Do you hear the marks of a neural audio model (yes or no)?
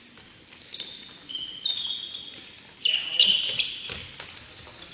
no